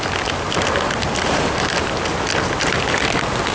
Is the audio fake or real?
real